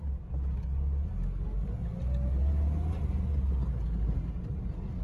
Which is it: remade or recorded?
recorded